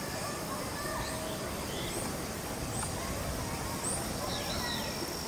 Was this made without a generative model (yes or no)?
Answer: yes